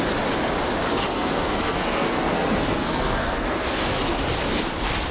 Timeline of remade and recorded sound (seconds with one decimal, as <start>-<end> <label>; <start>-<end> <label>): 0.0-0.9 recorded; 0.9-4.0 remade; 4.0-5.1 recorded